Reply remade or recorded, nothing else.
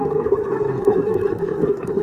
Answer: remade